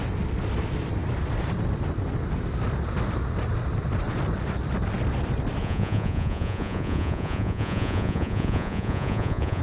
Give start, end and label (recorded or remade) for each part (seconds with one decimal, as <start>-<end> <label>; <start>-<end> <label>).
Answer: 0.0-5.6 recorded; 5.6-9.6 remade